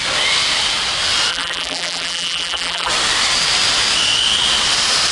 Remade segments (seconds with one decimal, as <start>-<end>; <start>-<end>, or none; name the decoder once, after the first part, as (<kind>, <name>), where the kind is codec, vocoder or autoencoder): 1.3-2.9 (vocoder, BigVGAN v2)